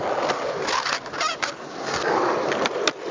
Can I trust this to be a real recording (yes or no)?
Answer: yes